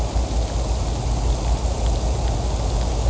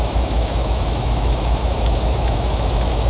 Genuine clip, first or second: first